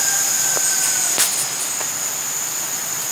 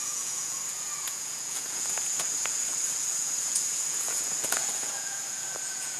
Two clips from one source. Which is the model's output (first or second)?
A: second